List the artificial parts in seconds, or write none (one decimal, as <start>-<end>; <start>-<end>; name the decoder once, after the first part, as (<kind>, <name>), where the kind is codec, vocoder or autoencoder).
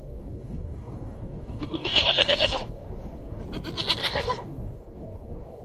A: 0.0-3.4 (codec, DAC); 4.0-5.6